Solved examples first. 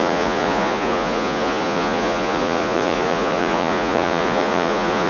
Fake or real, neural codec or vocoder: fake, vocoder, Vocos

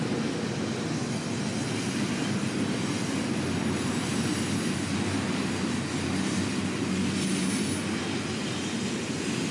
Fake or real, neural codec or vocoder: real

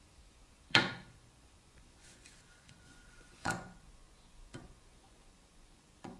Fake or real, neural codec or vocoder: fake, vocoder, Vocos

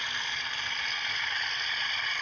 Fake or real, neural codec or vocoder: real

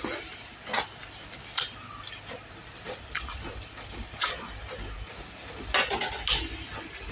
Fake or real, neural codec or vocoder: real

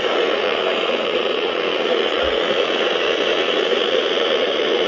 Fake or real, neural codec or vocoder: fake, vocoder, Vocos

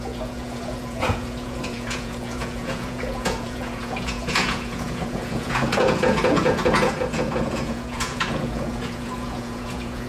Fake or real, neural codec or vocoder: fake, vocoder, Vocos